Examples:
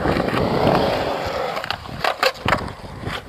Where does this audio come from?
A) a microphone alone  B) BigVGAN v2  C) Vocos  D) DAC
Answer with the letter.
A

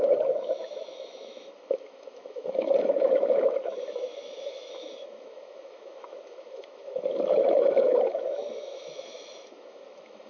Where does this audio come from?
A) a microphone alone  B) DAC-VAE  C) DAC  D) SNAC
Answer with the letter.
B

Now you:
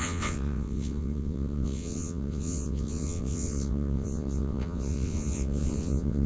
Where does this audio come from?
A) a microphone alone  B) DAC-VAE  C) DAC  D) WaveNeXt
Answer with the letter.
D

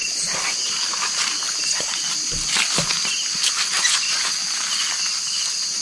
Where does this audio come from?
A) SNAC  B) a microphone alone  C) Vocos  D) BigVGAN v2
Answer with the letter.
B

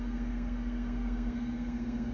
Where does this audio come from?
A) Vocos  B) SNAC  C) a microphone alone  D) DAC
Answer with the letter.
B